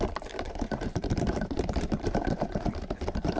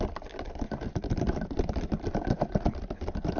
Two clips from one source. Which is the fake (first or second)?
first